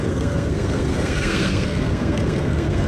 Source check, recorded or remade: remade